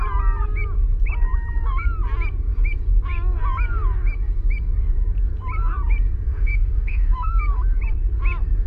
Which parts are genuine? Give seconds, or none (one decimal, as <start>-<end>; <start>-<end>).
0.0-6.3; 7.4-8.7